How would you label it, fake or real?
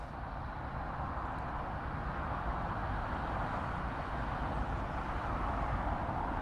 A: real